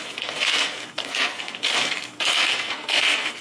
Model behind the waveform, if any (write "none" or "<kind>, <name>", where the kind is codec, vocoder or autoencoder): codec, SNAC